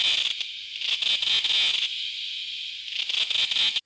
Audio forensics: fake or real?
real